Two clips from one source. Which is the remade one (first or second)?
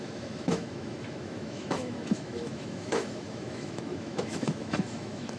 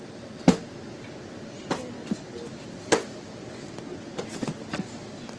first